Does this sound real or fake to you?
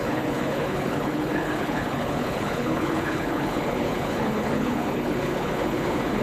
fake